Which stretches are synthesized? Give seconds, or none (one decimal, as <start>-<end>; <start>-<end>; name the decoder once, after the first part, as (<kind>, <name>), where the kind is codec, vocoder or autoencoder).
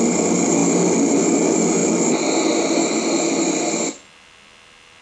none